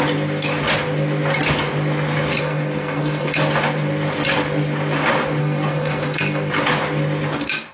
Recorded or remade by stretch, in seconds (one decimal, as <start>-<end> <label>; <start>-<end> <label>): 0.0-2.4 recorded; 2.4-3.4 remade; 3.4-5.4 recorded; 5.4-6.5 remade; 6.5-7.7 recorded